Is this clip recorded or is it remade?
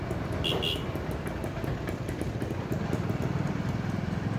recorded